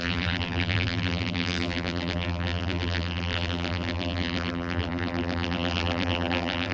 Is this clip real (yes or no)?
no